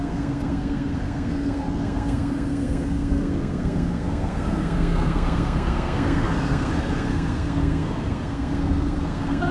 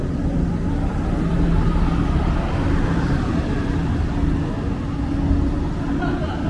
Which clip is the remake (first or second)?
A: first